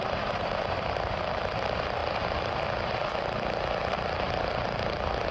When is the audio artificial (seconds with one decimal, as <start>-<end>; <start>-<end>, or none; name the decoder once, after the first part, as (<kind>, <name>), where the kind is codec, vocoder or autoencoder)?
0.0-2.0 (vocoder, BigVGAN v2)